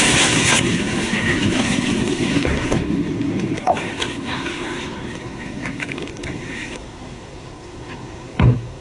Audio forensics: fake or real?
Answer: fake